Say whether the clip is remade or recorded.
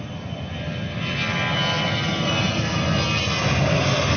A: recorded